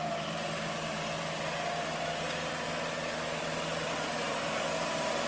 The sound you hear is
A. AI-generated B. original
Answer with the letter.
B